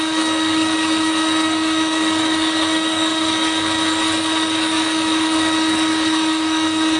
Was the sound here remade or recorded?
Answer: remade